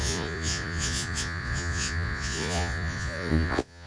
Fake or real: fake